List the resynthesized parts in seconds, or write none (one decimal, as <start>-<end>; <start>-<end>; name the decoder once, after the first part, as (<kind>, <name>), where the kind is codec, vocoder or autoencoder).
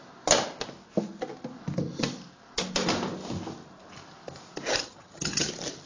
4.8-5.5 (vocoder, HiFi-GAN)